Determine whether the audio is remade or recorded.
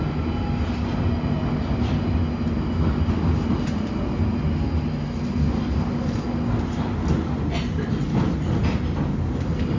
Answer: recorded